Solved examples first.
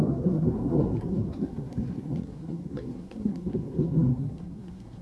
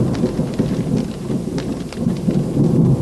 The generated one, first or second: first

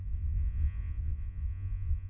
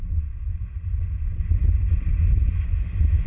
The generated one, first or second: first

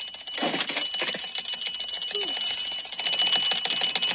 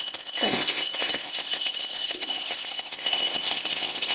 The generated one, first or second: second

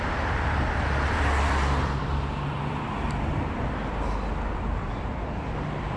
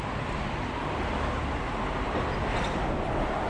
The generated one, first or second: first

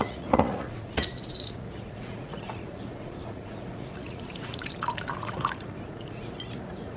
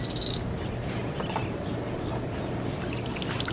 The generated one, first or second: first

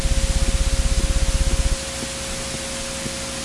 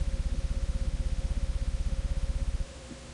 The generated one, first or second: second